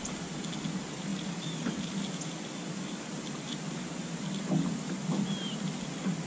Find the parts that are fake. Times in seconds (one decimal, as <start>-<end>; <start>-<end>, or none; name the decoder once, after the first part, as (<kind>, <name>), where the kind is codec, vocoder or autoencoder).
none